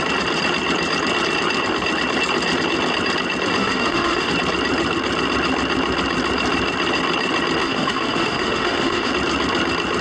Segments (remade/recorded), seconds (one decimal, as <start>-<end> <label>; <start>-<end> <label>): 0.0-3.6 recorded; 3.6-4.3 remade; 4.3-7.6 recorded; 7.6-9.1 remade; 9.1-10.0 recorded